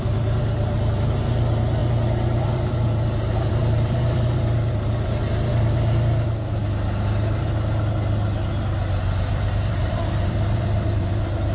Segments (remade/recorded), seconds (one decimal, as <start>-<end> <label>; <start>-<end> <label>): 0.0-6.6 remade; 6.6-9.3 recorded; 9.3-11.5 remade